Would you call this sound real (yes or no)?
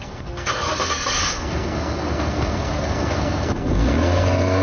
no